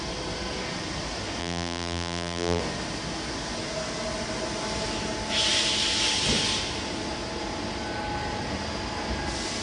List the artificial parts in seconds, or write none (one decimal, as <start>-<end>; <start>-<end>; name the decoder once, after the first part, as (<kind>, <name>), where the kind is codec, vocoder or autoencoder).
1.4-2.6 (vocoder, BigVGAN v2)